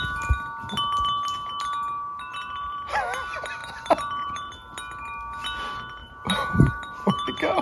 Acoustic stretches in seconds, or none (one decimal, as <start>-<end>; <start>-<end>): 0.0-2.3; 2.9-3.6; 4.5-6.0